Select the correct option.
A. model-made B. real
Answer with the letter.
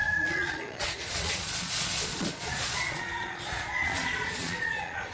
A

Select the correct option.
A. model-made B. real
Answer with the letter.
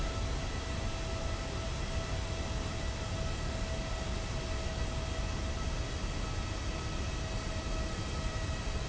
B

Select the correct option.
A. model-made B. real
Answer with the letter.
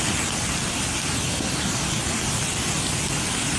B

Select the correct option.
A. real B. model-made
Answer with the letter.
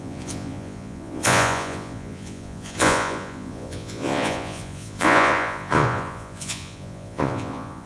B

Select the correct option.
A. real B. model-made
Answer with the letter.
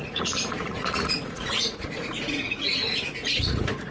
B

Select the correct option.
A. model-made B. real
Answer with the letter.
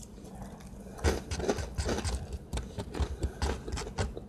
B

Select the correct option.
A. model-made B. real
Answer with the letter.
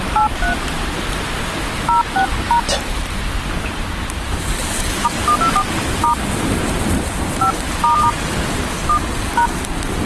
B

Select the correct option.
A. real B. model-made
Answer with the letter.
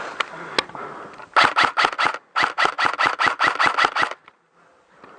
A